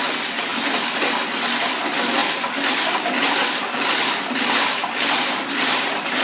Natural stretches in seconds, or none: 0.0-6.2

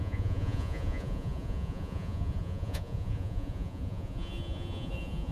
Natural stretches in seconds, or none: none